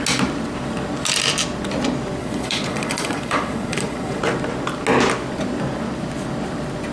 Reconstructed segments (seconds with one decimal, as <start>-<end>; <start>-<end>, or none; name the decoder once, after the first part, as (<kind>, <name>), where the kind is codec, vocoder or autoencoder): 2.2-4.2 (vocoder, Vocos)